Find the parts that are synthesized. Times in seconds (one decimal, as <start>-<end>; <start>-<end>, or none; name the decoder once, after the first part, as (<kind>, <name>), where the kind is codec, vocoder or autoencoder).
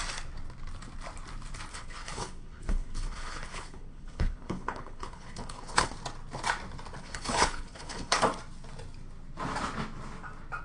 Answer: 1.7-5.9 (codec, HILCodec); 7.0-8.2